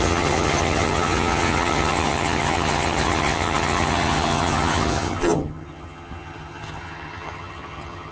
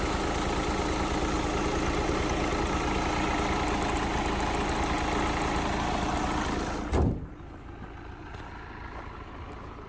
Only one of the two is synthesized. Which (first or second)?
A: first